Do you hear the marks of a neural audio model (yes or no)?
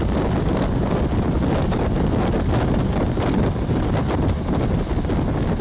no